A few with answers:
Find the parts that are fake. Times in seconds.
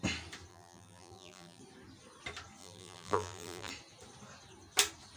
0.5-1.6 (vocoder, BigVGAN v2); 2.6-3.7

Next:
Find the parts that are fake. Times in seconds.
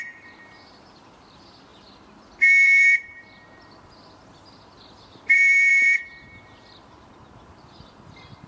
0.0-8.5 (vocoder, BigVGAN v2)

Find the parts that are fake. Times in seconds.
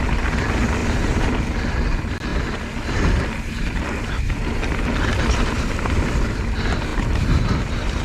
0.8-1.6 (vocoder, BigVGAN v2); 2.3-6.5; 6.9-8.0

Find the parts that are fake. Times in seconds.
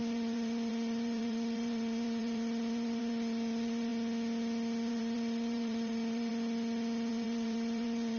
0.0-3.9 (vocoder, BigVGAN v2); 4.9-6.3; 7.1-8.2